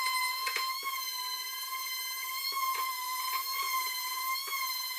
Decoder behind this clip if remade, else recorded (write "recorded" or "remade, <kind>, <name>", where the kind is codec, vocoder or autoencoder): remade, vocoder, Vocos